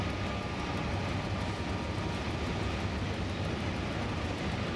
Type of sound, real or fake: real